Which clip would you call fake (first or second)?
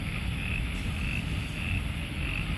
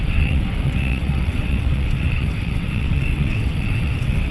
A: second